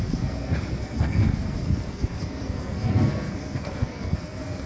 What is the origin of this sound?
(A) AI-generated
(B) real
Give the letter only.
A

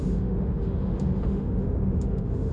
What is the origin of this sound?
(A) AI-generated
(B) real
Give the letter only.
A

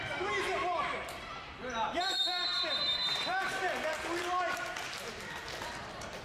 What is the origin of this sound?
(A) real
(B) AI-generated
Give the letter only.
B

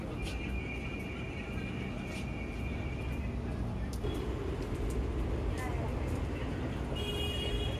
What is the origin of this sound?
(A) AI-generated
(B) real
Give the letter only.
B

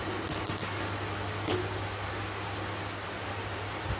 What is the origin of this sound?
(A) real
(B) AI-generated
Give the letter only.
A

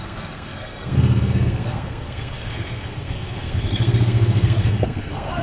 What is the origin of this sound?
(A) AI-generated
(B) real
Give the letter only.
A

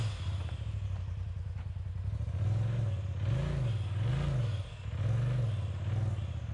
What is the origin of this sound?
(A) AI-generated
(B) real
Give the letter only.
B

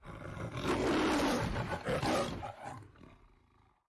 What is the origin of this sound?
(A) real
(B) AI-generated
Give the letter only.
A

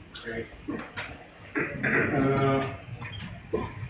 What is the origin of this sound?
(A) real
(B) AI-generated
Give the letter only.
A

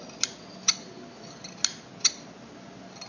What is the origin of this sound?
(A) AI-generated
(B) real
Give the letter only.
B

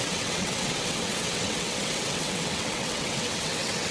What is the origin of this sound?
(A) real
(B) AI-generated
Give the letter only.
B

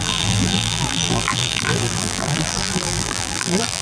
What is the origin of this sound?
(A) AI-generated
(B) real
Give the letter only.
A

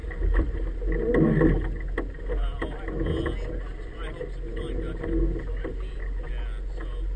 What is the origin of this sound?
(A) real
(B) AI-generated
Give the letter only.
A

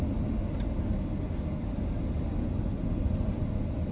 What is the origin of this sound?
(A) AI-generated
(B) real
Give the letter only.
B